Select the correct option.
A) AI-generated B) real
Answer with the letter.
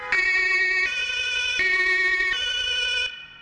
B